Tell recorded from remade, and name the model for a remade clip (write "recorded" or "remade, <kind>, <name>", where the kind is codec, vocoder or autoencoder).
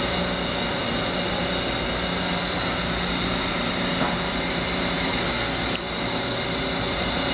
recorded